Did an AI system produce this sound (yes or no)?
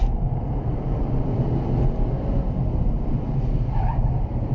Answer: yes